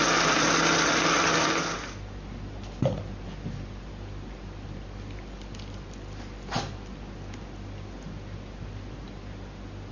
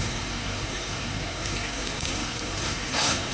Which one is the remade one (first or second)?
second